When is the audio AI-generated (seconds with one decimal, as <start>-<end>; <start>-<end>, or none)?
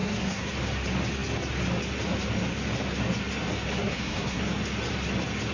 0.0-0.5; 3.7-4.4